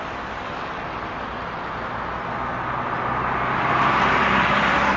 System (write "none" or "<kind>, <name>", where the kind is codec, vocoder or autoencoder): none